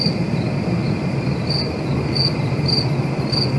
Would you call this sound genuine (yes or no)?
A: yes